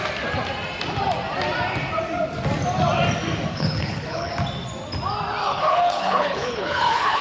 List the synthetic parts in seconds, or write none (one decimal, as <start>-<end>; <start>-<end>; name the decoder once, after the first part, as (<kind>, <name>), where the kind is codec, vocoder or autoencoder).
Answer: 3.5-4.3 (codec, HILCodec); 5.4-7.2